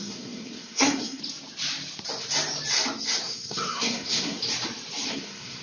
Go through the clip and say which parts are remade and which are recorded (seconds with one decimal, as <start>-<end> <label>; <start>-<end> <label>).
0.0-1.2 remade; 1.2-3.2 recorded; 3.2-4.4 remade; 4.4-5.1 recorded; 5.1-5.6 remade